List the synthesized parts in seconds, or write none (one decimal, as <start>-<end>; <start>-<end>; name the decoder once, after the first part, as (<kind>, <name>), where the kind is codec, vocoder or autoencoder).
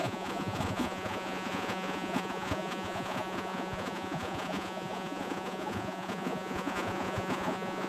0.0-7.9 (vocoder, Vocos)